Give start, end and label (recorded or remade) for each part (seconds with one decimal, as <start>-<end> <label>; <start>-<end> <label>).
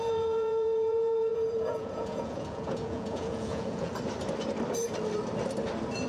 0.0-3.9 remade; 3.9-6.1 recorded